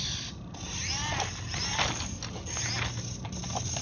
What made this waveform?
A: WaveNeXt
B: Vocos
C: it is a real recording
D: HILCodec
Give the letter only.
C